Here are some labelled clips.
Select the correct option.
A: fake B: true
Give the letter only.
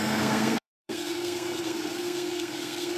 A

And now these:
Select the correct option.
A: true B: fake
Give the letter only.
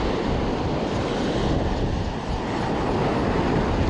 A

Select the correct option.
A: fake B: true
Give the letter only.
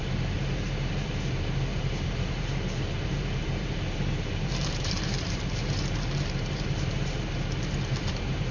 A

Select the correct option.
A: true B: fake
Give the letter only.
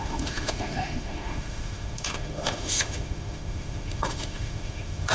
B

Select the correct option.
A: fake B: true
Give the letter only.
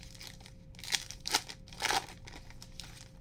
B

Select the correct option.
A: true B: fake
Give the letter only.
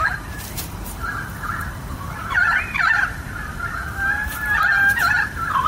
B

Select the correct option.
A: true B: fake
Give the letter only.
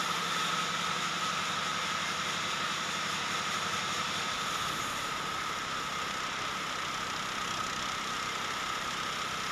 A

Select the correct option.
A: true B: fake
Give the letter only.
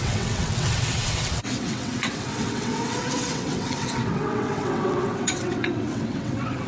B